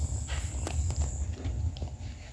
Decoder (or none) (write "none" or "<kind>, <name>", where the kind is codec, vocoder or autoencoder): none